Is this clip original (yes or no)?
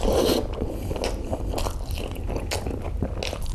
yes